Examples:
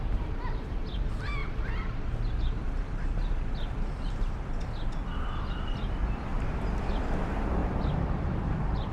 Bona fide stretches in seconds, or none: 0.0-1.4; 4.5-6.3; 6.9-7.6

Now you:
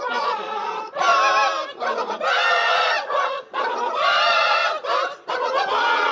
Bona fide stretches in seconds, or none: 1.1-2.5; 4.6-5.3